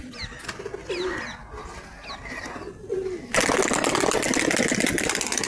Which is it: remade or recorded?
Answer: recorded